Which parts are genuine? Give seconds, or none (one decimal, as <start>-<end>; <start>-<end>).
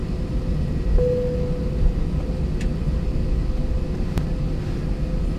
0.0-5.4